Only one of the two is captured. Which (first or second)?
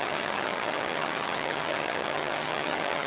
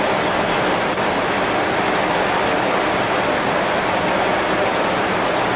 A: second